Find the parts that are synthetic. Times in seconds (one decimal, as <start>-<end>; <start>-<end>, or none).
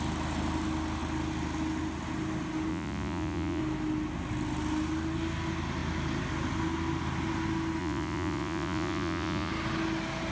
2.7-3.6; 7.8-9.5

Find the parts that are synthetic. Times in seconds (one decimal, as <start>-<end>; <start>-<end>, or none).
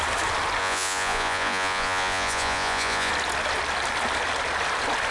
0.6-3.1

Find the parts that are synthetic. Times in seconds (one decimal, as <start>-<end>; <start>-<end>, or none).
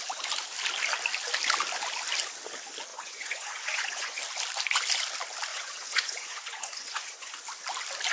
2.9-4.2; 5.5-7.4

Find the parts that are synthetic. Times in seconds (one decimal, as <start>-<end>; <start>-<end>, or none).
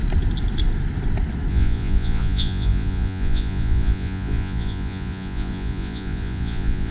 1.5-6.9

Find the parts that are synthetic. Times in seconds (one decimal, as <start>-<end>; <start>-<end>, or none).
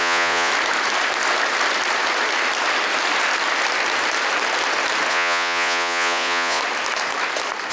0.0-0.5; 5.1-6.6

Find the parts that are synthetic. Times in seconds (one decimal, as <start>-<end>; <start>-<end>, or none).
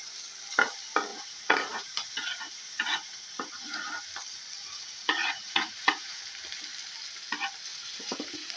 1.1-3.9; 4.6-6.2; 7.7-8.6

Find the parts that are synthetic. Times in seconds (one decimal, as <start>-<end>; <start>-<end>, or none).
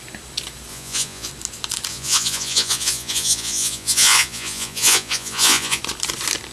0.7-1.3; 1.9-5.8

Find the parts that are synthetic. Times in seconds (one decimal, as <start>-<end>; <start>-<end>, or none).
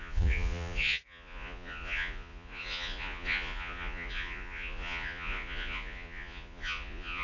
0.0-7.2